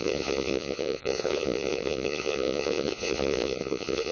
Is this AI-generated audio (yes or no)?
yes